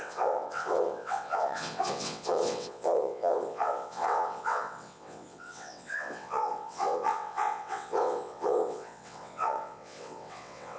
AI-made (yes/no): yes